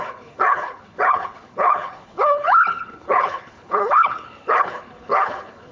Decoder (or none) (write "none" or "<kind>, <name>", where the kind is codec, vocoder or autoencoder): codec, HILCodec